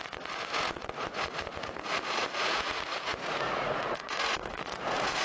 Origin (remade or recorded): remade